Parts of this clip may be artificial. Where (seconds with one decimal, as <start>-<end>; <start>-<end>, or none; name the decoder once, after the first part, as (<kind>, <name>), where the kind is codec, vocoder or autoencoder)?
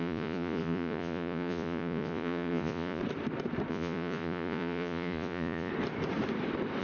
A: 0.0-3.0 (vocoder, Vocos); 3.7-5.7